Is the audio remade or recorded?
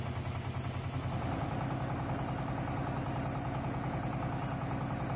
recorded